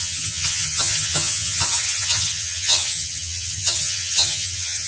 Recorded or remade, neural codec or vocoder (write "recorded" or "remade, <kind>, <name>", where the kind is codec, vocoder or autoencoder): remade, vocoder, HiFi-GAN